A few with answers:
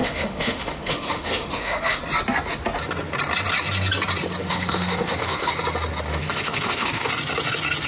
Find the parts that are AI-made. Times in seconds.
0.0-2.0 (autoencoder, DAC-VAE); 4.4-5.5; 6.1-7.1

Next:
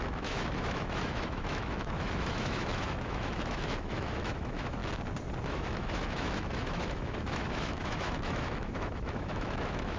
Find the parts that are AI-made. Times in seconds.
0.0-4.8 (autoencoder, DAC-VAE); 5.4-10.0

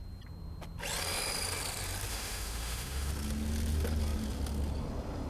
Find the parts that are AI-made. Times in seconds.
2.1-3.1 (autoencoder, DAC-VAE)